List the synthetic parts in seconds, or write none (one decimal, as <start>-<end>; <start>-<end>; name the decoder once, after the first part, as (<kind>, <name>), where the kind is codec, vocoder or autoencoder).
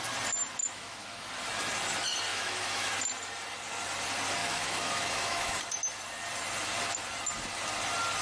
0.6-1.3 (autoencoder, DAC-VAE); 2.3-2.9; 4.4-5.6